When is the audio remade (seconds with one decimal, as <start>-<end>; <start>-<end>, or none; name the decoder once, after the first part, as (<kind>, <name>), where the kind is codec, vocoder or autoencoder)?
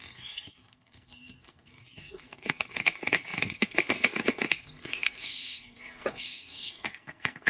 0.0-7.5 (codec, SNAC)